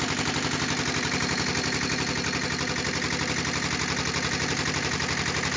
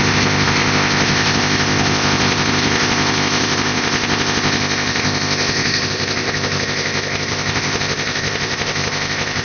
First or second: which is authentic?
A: first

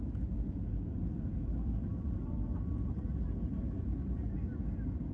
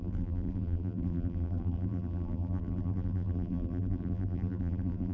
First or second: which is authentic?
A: first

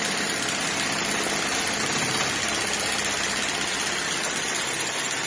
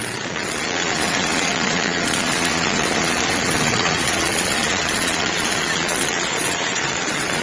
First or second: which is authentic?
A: first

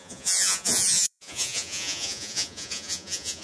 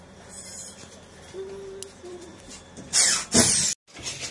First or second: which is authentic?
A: second